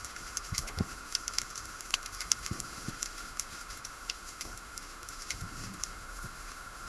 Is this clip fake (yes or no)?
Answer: yes